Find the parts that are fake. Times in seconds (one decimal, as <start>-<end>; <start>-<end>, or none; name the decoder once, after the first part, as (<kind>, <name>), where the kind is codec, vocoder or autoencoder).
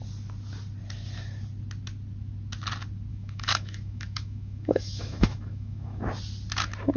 3.1-6.0 (autoencoder, DAC-VAE)